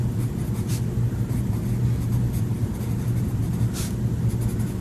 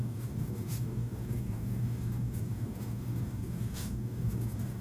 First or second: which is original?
first